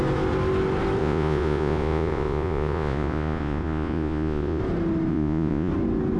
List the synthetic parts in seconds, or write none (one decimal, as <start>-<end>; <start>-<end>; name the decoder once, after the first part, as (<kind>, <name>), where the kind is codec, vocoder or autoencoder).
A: 1.0-4.6 (vocoder, Vocos); 5.1-5.7